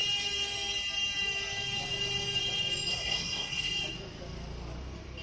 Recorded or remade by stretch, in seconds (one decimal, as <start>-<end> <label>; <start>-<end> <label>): 0.0-2.9 recorded; 2.9-3.7 remade; 3.7-5.2 recorded